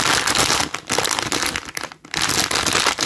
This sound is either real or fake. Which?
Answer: real